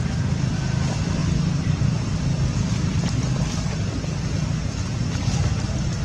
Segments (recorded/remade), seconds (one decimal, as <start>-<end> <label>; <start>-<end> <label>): 0.0-1.2 recorded; 1.2-3.2 remade; 3.2-6.0 recorded